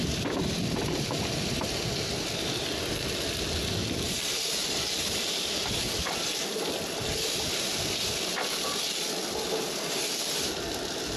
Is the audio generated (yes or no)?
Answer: no